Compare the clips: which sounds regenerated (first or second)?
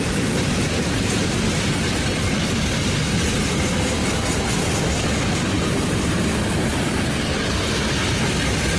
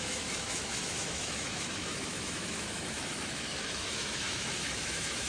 second